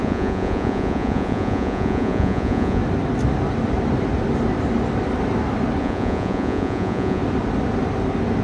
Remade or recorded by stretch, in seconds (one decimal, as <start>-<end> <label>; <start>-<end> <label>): 0.0-2.8 remade; 2.8-5.8 recorded; 5.8-7.2 remade; 7.2-8.4 recorded

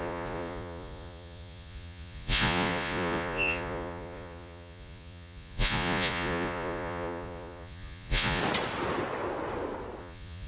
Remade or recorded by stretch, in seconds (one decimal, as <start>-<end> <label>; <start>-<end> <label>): 0.0-8.4 remade; 8.4-10.0 recorded; 10.0-10.5 remade

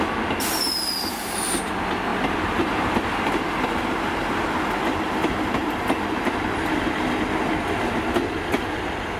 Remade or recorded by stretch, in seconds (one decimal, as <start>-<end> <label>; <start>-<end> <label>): 0.0-9.2 recorded

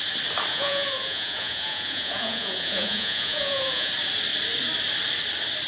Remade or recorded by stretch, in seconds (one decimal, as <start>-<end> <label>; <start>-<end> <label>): 0.0-0.5 recorded; 0.5-3.9 remade; 3.9-5.7 recorded

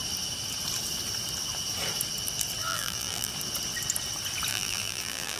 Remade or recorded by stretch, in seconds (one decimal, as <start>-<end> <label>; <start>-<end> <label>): 0.0-2.7 recorded; 2.7-3.3 remade; 3.3-4.5 recorded; 4.5-5.4 remade

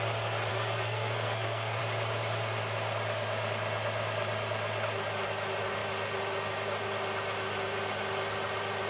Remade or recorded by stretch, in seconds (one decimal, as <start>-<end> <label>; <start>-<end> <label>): 0.0-0.5 recorded; 0.5-1.8 remade; 1.8-8.9 recorded